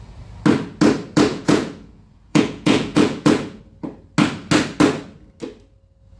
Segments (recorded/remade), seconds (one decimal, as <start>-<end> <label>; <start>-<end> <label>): 0.0-1.3 recorded; 1.3-3.6 remade; 3.6-6.2 recorded